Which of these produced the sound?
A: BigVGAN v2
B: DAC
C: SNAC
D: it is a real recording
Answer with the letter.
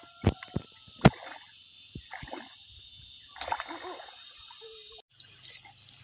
D